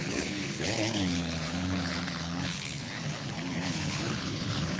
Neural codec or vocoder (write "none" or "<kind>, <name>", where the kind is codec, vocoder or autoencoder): codec, HILCodec